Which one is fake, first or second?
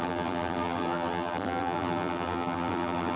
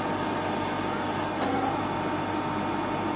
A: first